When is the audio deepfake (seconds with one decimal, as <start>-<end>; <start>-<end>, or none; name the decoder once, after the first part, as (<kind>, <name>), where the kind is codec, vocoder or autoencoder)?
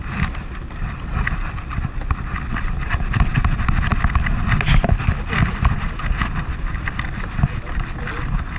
none